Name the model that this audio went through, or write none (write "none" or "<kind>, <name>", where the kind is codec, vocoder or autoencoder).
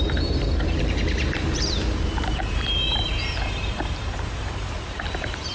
vocoder, BigVGAN v2